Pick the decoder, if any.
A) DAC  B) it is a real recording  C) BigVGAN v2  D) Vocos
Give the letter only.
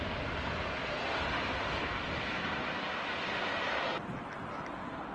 B